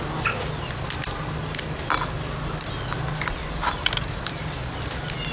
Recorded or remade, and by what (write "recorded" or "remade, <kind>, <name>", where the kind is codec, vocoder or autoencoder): recorded